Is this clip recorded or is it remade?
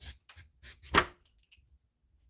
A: recorded